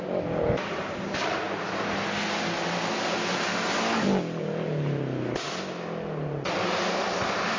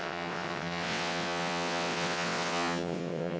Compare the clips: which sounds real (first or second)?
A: first